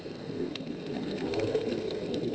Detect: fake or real fake